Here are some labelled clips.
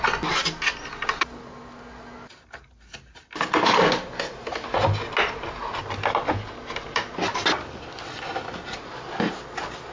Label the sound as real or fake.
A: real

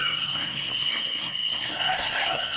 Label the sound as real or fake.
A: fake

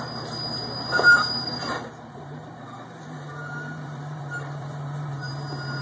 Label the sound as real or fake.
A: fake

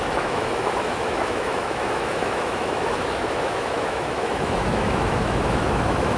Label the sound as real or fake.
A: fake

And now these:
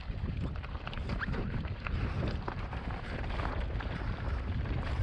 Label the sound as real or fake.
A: fake